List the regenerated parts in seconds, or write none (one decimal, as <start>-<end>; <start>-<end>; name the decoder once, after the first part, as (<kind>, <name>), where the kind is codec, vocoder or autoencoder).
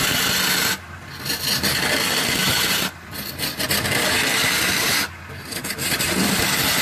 none